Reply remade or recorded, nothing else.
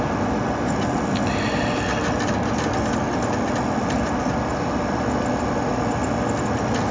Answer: recorded